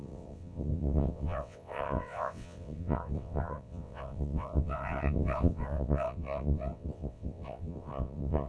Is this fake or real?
fake